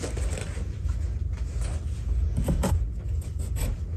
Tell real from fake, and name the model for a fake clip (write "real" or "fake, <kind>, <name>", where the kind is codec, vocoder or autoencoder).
real